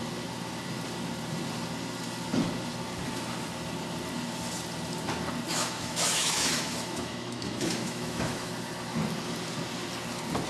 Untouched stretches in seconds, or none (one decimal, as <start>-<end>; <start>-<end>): 0.0-5.5; 8.5-10.5